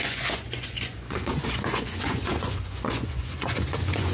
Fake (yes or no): yes